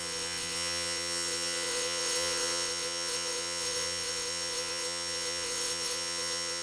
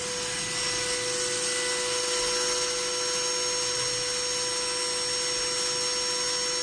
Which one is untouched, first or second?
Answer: second